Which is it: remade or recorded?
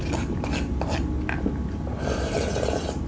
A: recorded